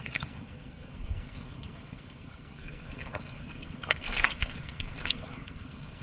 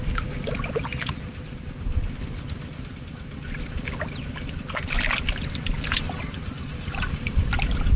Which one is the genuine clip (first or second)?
second